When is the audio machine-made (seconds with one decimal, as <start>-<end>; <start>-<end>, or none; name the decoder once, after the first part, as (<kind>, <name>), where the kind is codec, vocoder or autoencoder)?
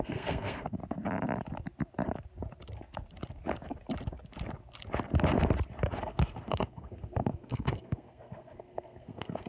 0.0-0.8 (codec, SNAC); 6.0-9.5